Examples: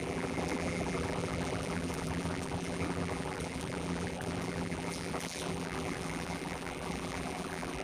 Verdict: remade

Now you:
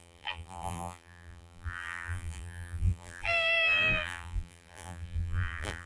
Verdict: remade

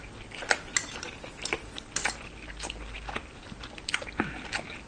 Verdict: recorded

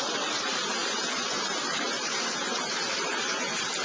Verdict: remade